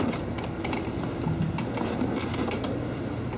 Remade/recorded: recorded